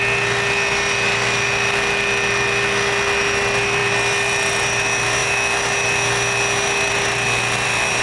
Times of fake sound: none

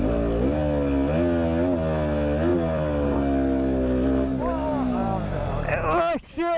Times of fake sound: 2.5-4.4 (vocoder, BigVGAN v2)

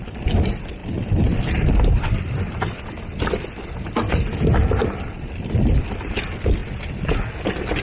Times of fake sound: 0.0-4.8 (vocoder, BigVGAN v2); 5.8-6.6; 7.3-7.8

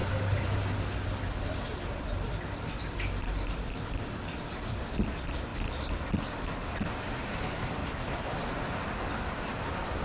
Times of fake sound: 0.0-0.6 (vocoder, BigVGAN v2); 5.5-6.1; 7.8-8.3

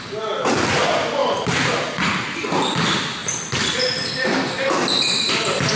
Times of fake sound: none

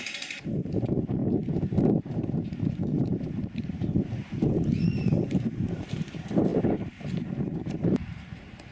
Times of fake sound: 0.0-8.7 (vocoder, BigVGAN v2)

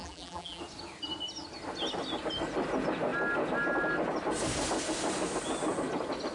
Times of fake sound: 0.0-0.6 (vocoder, BigVGAN v2)